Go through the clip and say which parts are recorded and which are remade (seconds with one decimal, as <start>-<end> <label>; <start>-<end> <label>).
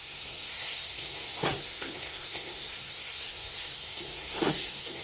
0.0-5.0 remade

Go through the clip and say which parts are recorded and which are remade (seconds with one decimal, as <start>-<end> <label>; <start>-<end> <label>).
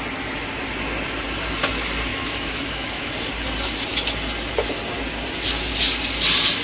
0.0-2.1 recorded; 2.1-3.1 remade; 3.1-6.6 recorded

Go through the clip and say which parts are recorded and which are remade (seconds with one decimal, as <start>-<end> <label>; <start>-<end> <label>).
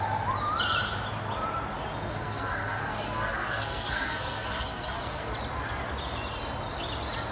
0.0-2.1 recorded; 2.1-5.3 remade; 5.3-7.3 recorded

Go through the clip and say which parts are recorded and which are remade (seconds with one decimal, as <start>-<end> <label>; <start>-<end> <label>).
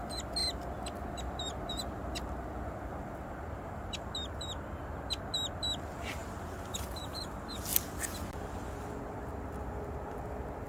0.0-10.7 recorded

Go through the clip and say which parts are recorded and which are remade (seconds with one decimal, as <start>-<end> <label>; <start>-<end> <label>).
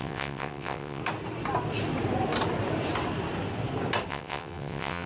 0.0-1.0 remade; 1.0-4.1 recorded; 4.1-5.1 remade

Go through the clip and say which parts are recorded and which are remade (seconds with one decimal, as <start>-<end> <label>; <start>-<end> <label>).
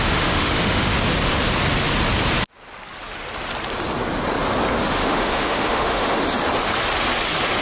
0.0-0.9 remade; 0.9-4.9 recorded; 4.9-6.2 remade; 6.2-7.6 recorded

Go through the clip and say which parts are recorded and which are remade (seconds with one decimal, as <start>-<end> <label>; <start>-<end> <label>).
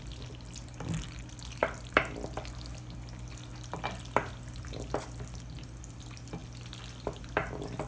0.0-7.9 recorded